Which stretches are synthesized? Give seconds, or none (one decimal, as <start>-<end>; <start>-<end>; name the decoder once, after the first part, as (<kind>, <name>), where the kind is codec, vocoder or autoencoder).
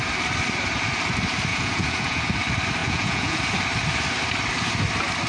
1.5-2.2 (vocoder, Vocos); 2.8-3.4